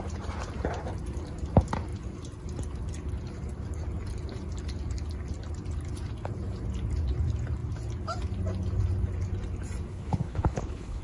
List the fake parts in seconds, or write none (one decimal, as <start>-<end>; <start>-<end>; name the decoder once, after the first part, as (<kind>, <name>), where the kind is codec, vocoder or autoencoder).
9.9-11.0 (codec, HILCodec)